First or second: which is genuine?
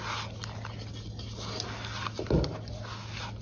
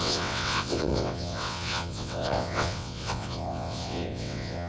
first